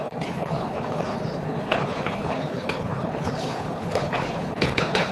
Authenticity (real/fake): fake